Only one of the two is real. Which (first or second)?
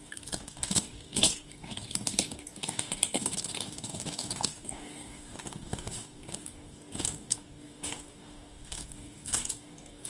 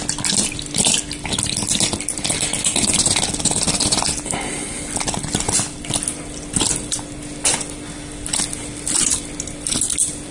second